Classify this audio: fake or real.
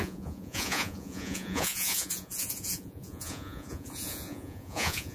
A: fake